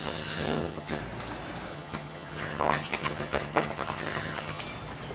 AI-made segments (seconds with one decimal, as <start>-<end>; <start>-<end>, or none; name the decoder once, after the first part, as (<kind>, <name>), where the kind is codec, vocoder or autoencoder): 0.0-1.0 (vocoder, HiFi-GAN); 1.7-4.6